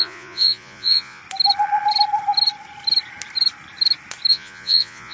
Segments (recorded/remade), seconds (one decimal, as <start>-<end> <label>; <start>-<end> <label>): 0.0-1.2 remade; 1.2-4.3 recorded; 4.3-5.1 remade